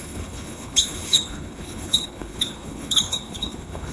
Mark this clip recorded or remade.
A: remade